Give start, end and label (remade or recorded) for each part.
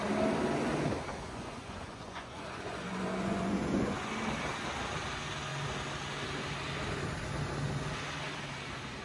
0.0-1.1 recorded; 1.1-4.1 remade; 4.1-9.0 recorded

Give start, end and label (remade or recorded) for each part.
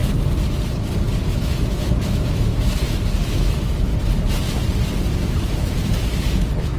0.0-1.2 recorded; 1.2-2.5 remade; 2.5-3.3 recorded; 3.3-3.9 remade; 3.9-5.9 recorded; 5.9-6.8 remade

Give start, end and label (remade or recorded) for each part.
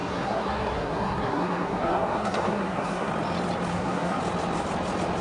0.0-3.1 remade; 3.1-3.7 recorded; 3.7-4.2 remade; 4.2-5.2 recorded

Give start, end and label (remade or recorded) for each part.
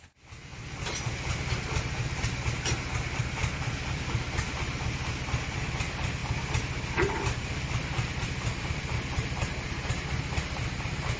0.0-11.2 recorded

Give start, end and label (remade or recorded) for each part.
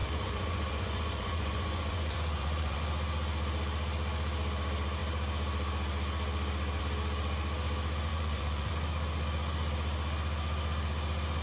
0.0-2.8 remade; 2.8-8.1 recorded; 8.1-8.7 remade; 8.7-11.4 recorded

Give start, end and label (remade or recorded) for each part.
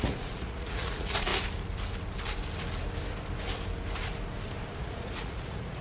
0.0-1.3 remade; 1.3-4.8 recorded; 4.8-5.8 remade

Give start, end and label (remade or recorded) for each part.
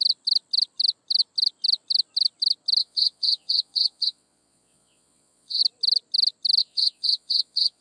0.0-2.8 recorded; 2.8-5.6 remade; 5.6-6.6 recorded; 6.6-7.8 remade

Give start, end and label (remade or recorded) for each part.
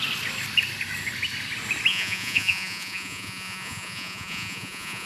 0.0-1.9 recorded; 1.9-5.1 remade